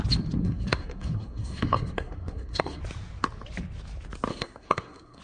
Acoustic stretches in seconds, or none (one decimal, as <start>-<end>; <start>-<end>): 0.0-0.4; 2.8-4.3